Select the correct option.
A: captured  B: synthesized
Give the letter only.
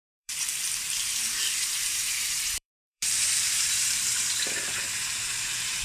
B